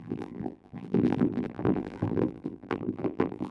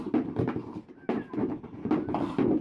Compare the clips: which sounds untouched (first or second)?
second